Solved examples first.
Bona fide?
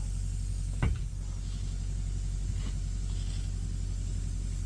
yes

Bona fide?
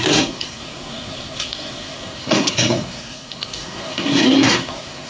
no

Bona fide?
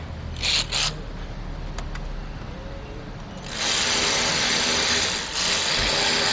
yes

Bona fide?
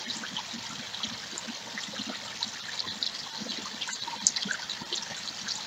yes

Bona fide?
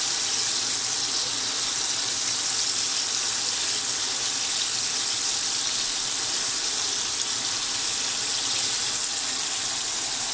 yes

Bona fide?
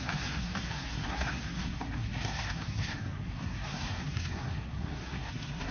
no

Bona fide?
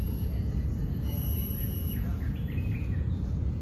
no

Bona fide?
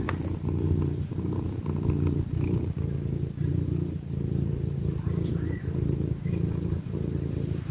no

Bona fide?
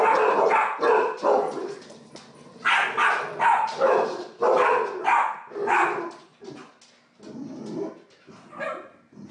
yes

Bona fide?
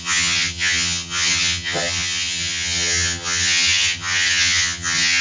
no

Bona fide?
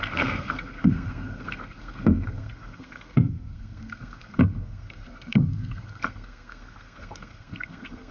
no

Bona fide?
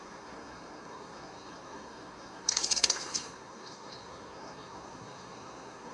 no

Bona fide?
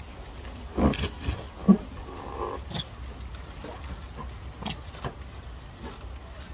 yes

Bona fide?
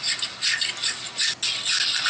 yes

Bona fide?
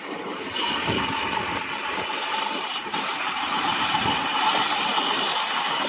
no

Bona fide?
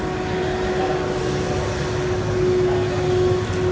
yes